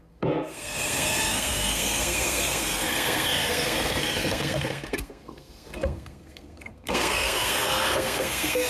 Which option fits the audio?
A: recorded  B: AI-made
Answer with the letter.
B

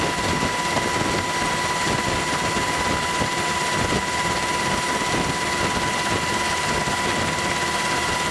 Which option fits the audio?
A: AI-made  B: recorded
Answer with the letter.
B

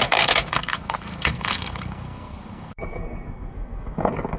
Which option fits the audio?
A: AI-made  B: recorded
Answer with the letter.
A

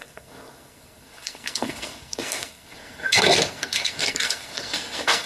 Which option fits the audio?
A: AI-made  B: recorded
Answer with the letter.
A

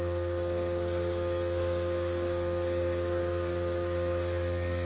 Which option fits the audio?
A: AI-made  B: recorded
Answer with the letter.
A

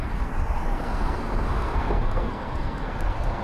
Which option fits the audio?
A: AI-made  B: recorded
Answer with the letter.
A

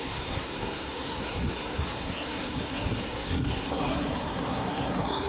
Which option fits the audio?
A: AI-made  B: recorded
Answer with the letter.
A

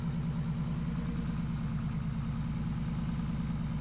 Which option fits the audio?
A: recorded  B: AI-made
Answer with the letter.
A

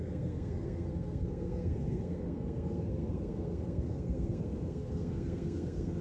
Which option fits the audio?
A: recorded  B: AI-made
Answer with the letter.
B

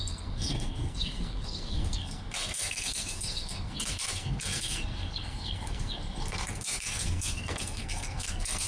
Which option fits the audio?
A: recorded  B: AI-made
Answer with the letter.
B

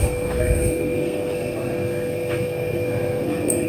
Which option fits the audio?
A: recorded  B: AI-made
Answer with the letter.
B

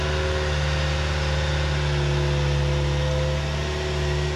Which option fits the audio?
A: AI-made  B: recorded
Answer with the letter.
B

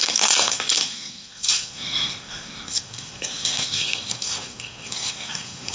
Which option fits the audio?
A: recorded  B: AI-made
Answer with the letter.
B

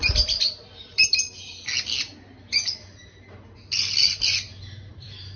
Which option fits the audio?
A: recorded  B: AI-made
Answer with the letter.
A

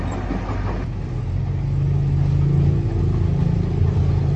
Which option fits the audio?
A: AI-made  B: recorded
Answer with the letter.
B